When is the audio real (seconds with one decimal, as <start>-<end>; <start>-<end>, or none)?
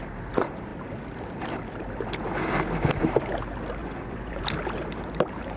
0.0-3.8; 4.4-5.6